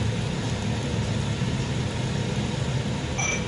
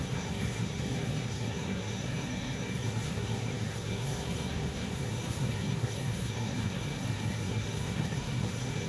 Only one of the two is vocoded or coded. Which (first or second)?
second